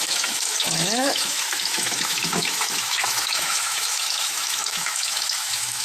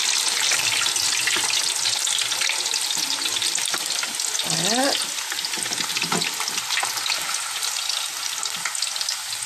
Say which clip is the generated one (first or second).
first